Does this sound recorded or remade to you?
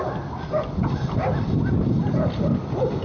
recorded